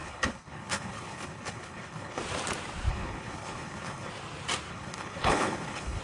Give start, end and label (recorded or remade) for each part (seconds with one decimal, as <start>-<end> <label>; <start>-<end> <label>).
0.0-2.2 remade; 2.2-2.9 recorded; 2.9-4.1 remade; 4.1-4.7 recorded; 4.7-6.0 remade